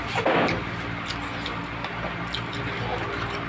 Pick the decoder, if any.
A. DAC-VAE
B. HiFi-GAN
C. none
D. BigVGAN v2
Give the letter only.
C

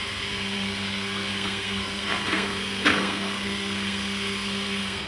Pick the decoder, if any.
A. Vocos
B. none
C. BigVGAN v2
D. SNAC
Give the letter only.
D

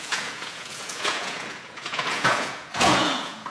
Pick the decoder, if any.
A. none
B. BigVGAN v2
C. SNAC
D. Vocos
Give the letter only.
D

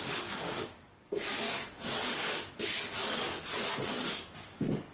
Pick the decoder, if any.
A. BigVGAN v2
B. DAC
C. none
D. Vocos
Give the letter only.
B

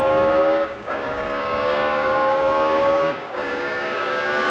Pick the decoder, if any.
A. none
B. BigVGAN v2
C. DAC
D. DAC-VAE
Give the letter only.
C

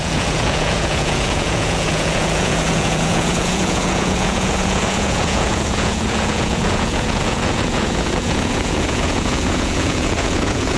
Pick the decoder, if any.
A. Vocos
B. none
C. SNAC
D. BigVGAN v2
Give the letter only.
A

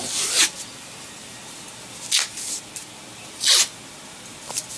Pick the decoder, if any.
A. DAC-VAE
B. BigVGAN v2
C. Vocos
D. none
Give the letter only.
D